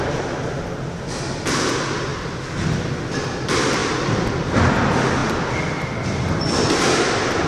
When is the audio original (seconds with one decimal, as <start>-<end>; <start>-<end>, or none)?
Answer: 0.0-3.8; 4.7-5.2; 5.9-7.5